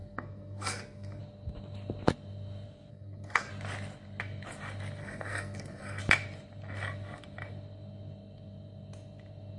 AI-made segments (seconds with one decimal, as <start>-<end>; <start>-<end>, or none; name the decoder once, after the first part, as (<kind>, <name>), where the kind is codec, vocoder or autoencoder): 0.0-1.2 (codec, SNAC); 2.9-3.5; 5.0-6.0